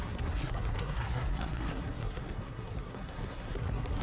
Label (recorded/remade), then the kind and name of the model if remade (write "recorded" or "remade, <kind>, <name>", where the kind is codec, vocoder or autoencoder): remade, codec, SNAC